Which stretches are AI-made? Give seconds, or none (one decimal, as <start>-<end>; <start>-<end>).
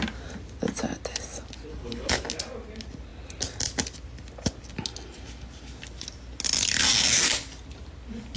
1.7-2.2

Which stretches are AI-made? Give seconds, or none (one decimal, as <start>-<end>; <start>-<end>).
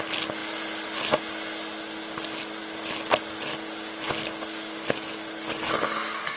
none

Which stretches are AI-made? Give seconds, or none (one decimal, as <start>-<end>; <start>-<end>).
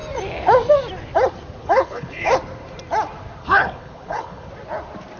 1.6-2.3; 3.4-4.5